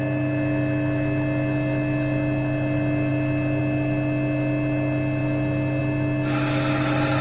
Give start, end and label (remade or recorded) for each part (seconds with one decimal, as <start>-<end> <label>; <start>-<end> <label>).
0.0-7.2 recorded